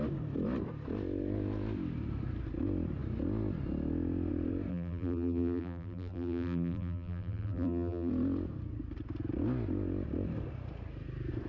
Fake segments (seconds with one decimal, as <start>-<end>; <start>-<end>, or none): 4.7-8.1